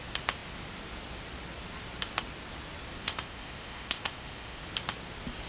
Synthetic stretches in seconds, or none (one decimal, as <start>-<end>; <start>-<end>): 3.0-4.6